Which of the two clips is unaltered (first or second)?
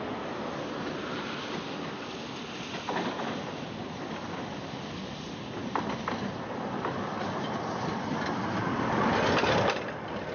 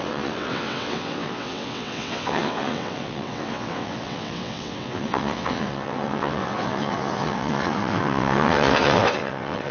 first